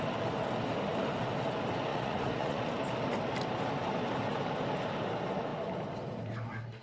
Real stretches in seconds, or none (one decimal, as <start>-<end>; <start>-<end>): 0.0-1.9; 2.7-6.8